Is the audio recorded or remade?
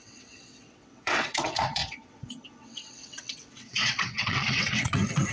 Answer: remade